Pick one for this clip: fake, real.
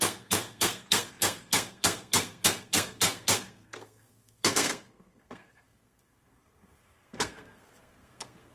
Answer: fake